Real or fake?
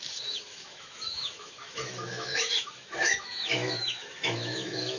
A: fake